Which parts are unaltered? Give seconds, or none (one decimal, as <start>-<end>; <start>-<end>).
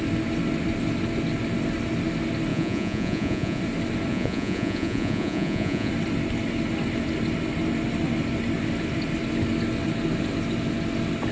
0.0-2.5; 3.6-4.1; 5.9-11.3